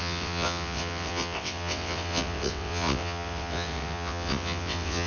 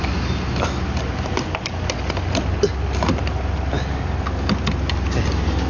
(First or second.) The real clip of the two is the second